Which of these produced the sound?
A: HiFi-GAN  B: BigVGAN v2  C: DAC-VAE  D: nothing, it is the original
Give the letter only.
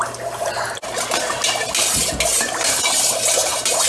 D